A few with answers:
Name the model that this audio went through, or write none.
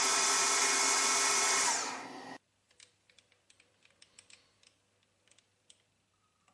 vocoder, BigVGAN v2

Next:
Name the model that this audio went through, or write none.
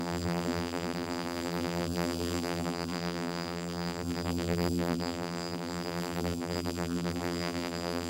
vocoder, BigVGAN v2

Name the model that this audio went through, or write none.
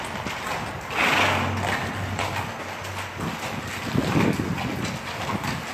none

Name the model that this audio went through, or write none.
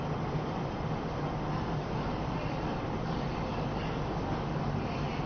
none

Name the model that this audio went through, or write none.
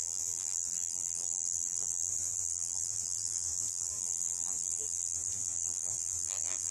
vocoder, BigVGAN v2